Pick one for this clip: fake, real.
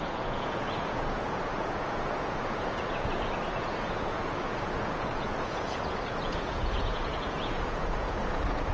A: fake